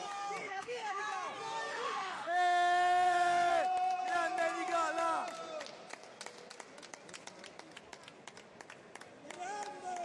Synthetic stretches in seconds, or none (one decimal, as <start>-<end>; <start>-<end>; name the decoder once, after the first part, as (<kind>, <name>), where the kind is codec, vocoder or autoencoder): 0.4-1.0 (autoencoder, DAC-VAE); 1.7-3.5

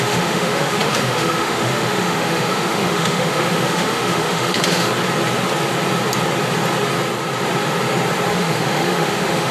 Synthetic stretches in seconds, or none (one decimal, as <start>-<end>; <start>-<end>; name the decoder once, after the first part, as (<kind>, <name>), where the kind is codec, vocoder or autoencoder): 0.0-4.9 (autoencoder, DAC-VAE); 8.3-9.5

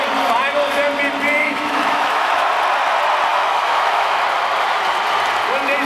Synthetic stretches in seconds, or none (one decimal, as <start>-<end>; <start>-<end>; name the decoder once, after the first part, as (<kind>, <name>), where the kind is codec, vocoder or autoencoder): 1.4-2.5 (autoencoder, DAC-VAE); 3.3-4.2

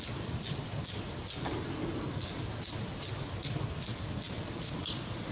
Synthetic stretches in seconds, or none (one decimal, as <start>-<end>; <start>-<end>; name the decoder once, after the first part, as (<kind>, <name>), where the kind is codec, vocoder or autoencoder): none

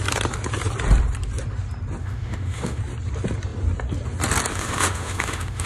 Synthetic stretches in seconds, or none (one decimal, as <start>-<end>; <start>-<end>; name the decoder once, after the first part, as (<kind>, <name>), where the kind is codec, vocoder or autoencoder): 2.0-2.8 (autoencoder, DAC-VAE); 4.5-5.7